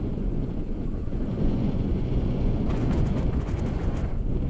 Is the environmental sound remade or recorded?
remade